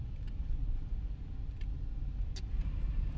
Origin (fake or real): real